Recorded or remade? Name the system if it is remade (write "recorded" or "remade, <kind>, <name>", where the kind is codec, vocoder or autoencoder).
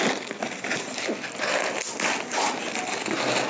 recorded